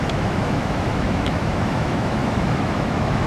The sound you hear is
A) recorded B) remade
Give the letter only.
B